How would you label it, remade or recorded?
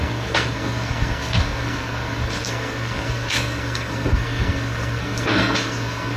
remade